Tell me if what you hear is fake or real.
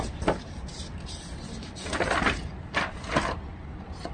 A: real